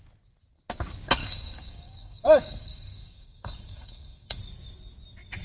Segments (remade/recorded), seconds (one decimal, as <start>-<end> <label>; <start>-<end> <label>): 0.0-1.2 recorded; 1.2-4.4 remade; 4.4-5.4 recorded